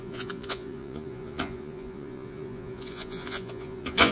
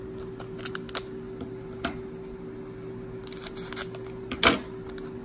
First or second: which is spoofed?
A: first